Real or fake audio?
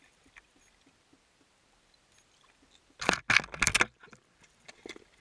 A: real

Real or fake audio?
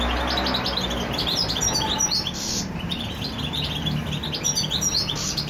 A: real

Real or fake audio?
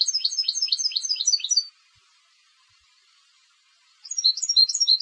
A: fake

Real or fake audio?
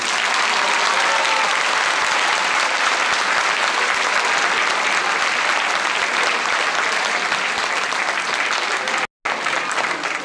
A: real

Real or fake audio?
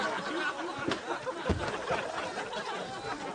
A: real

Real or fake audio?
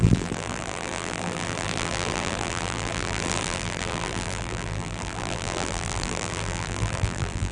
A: fake